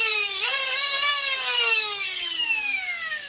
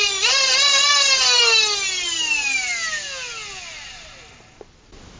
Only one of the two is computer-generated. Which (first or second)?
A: first